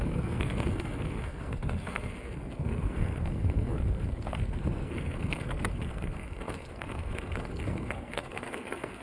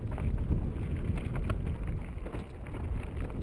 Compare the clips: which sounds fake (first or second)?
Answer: first